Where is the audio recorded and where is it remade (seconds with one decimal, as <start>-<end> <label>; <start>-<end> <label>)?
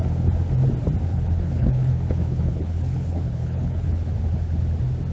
0.0-1.1 recorded; 1.1-4.1 remade; 4.1-5.1 recorded